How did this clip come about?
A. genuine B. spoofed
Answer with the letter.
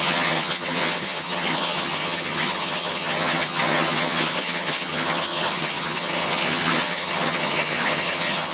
B